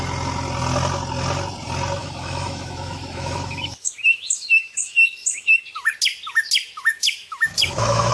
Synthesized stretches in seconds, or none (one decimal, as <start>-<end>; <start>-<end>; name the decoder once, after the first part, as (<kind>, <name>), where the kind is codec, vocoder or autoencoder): 2.0-5.6 (autoencoder, DAC-VAE); 6.9-8.1